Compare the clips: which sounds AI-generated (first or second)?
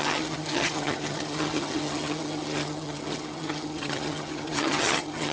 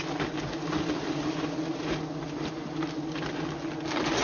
first